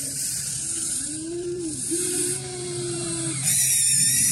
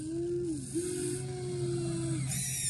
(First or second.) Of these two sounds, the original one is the second